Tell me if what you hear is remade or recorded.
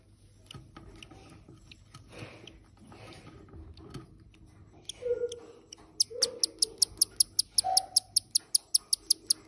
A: recorded